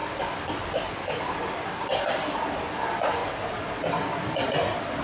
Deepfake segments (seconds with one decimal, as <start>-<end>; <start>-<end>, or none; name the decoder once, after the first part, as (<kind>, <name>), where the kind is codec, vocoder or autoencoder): 0.0-2.1 (vocoder, BigVGAN v2); 3.2-3.8